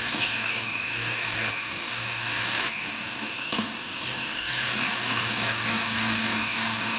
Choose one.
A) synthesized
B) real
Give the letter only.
A